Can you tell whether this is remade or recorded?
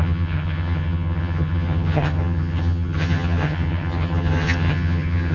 remade